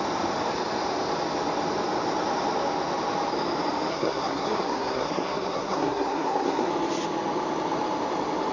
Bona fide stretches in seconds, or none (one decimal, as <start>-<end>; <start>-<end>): 0.0-3.9; 6.7-8.5